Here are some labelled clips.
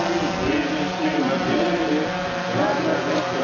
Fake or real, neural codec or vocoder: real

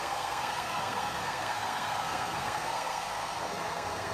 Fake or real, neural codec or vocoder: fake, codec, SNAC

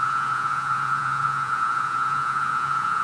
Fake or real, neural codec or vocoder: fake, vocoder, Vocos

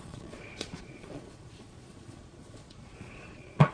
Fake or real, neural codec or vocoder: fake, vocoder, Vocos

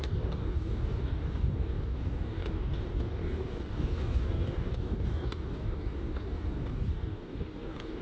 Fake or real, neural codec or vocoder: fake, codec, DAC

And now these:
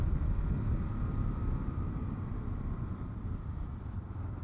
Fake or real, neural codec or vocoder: real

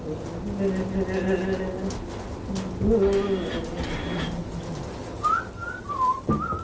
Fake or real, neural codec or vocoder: real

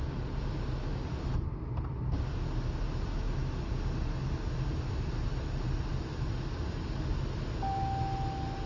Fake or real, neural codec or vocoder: real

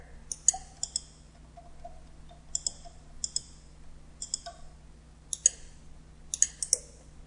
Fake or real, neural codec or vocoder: real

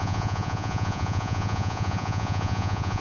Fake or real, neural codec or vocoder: fake, vocoder, Vocos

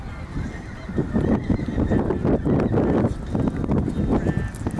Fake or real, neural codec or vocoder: real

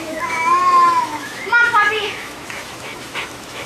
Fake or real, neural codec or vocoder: fake, autoencoder, DAC-VAE